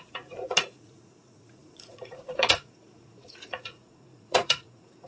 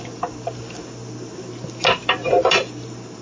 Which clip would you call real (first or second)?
second